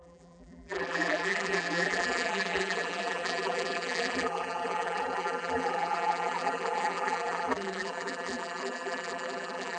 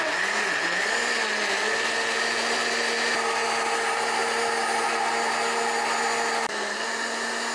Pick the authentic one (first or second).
second